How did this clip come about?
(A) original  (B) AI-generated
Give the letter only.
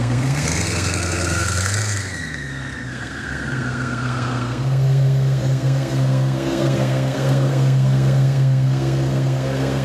B